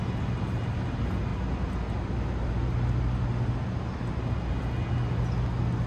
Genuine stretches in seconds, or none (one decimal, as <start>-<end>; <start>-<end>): 0.0-5.9